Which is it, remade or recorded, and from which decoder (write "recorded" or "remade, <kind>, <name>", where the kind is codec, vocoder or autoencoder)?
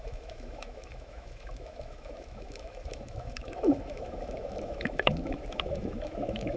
remade, autoencoder, DAC-VAE